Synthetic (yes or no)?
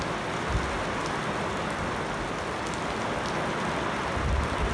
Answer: no